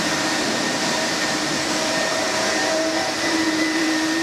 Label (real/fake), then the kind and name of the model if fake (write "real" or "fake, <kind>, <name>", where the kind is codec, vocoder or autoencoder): fake, vocoder, BigVGAN v2